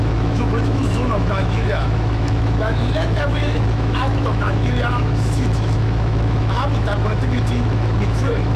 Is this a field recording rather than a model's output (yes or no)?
no